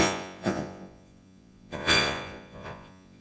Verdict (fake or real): fake